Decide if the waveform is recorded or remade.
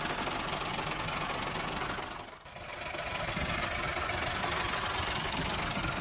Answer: recorded